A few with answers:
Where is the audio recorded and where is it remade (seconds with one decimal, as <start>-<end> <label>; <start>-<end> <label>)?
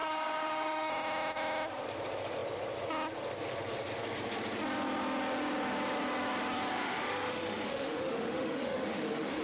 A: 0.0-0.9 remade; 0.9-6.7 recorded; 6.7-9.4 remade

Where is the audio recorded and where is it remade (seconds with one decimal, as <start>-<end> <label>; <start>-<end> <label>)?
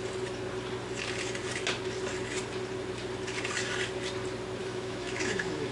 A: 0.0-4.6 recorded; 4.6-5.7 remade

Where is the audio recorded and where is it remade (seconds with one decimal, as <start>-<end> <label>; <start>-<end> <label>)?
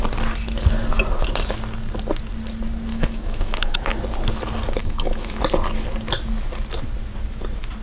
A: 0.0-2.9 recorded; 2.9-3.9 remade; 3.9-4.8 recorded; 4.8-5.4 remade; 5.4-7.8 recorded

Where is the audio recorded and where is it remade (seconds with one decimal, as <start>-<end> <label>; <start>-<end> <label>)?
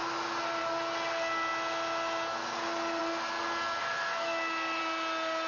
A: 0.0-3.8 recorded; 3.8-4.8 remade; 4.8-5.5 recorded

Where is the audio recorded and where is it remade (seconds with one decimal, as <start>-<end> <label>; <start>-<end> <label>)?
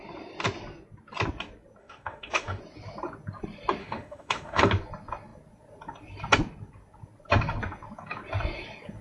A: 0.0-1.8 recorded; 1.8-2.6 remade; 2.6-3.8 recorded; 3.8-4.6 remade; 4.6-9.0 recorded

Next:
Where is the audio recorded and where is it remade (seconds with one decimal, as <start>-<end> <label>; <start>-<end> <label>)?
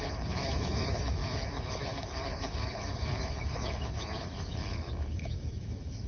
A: 0.0-6.1 remade